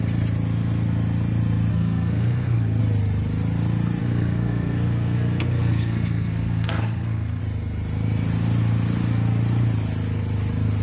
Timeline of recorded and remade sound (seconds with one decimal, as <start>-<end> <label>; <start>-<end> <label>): 0.0-1.7 recorded; 1.7-2.8 remade; 2.8-4.0 recorded; 4.0-7.4 remade; 7.4-10.8 recorded